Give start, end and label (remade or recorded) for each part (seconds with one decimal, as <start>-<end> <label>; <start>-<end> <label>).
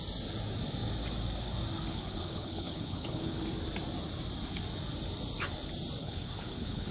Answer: 0.0-1.9 recorded; 1.9-3.4 remade; 3.4-6.0 recorded; 6.0-6.9 remade